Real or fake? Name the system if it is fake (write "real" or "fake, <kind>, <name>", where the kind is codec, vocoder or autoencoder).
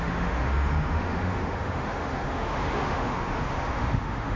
fake, autoencoder, DAC-VAE